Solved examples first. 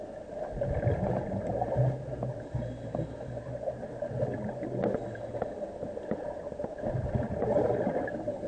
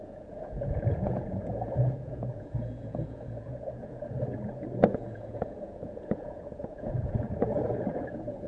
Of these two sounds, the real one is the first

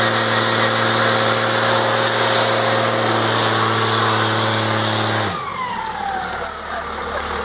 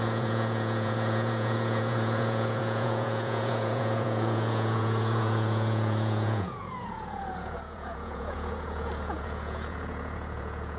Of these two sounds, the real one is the first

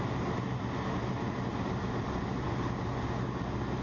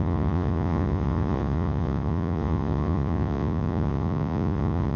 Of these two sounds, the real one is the first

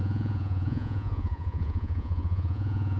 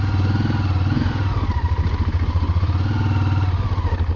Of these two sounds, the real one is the second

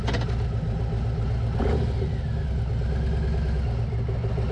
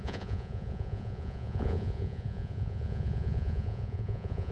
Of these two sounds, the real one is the first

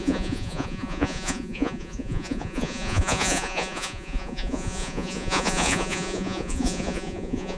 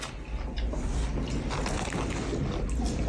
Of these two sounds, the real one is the second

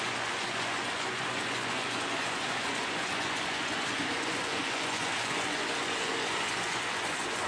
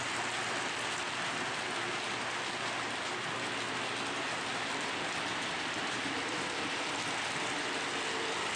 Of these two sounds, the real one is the second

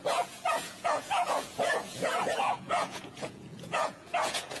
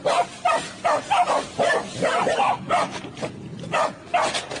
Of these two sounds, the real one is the second